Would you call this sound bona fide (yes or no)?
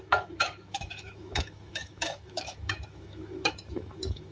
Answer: no